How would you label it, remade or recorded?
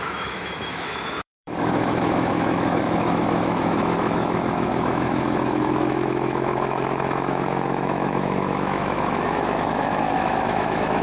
remade